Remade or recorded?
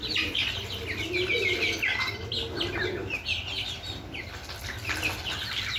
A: recorded